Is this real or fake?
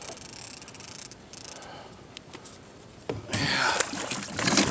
real